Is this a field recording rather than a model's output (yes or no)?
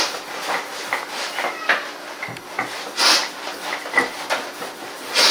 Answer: yes